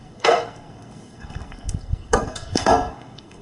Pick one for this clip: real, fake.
fake